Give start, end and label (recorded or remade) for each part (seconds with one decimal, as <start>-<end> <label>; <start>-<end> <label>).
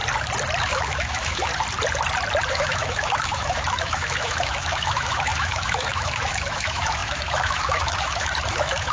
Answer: 0.0-0.6 recorded; 0.6-1.5 remade; 1.5-2.5 recorded; 2.5-8.9 remade